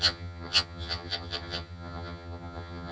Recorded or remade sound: remade